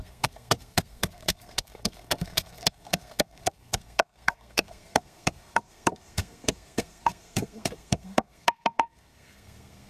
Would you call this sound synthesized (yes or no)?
yes